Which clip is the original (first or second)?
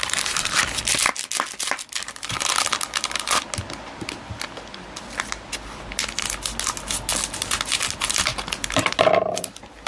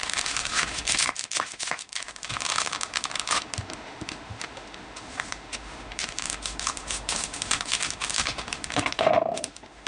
first